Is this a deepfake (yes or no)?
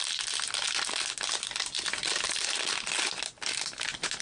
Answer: no